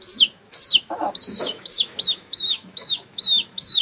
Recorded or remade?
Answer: remade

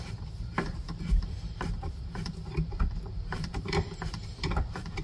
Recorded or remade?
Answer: remade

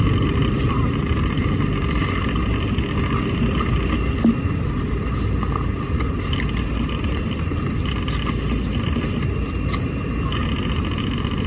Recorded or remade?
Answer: recorded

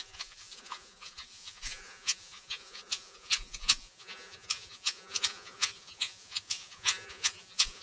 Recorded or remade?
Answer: remade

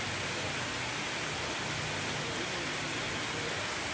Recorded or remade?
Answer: recorded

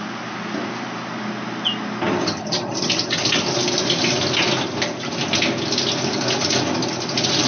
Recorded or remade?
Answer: recorded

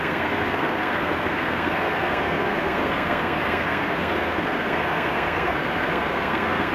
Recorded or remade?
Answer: remade